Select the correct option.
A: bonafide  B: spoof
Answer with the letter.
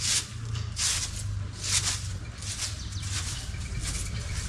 A